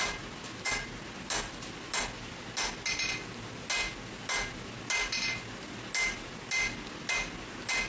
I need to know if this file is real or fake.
real